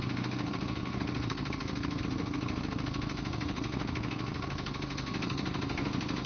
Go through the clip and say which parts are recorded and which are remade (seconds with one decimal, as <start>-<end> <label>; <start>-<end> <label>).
0.0-6.3 remade